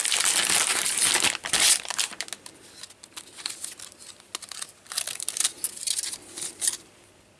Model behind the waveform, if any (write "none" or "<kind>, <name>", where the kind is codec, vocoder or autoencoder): none